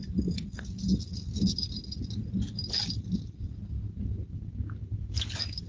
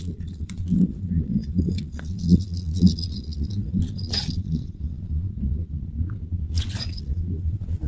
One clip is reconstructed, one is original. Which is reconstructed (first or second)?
second